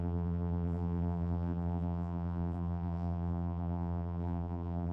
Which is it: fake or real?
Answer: fake